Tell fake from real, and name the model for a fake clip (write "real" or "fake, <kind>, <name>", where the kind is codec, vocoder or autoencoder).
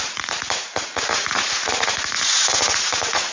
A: fake, vocoder, Vocos